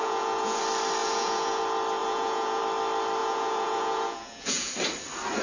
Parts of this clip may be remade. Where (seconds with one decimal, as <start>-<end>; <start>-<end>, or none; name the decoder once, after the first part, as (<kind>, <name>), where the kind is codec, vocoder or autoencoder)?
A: 0.0-0.6 (vocoder, Vocos); 1.0-1.6; 2.0-2.6; 3.2-4.7